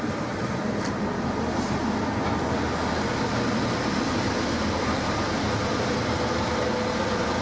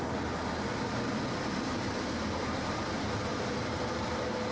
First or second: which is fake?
second